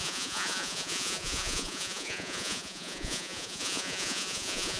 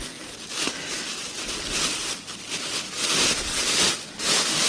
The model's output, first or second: first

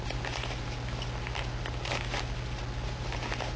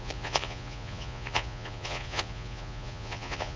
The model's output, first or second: second